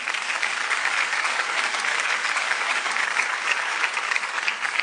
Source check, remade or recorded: remade